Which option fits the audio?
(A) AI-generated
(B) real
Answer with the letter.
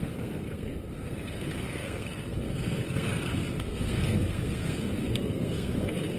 A